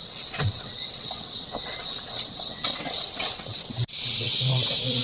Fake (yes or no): yes